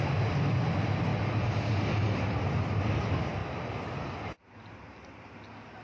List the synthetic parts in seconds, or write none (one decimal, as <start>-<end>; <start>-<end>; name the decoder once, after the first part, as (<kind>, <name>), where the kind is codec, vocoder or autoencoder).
none